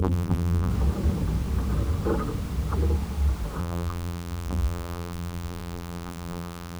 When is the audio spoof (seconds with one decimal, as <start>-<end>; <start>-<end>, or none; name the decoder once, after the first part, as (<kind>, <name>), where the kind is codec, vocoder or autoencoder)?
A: 0.0-0.7 (vocoder, BigVGAN v2); 3.6-6.8